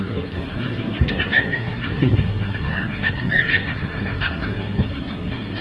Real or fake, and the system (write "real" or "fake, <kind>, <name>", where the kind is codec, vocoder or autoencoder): fake, codec, SNAC